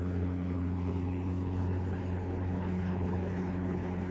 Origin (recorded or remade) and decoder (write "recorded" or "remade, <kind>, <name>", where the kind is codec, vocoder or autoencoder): remade, codec, HILCodec